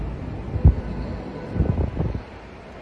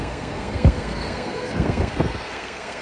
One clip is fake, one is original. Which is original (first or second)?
first